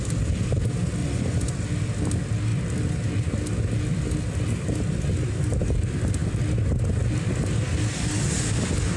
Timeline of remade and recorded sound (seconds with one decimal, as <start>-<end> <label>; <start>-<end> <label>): 0.0-1.0 recorded; 1.0-1.5 remade; 1.5-9.0 recorded